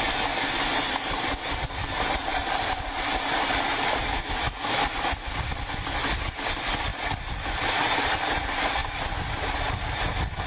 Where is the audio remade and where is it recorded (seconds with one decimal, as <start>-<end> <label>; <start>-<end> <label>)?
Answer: 0.0-10.5 recorded